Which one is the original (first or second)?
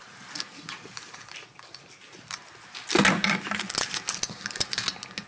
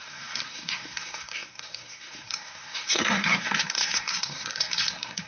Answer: first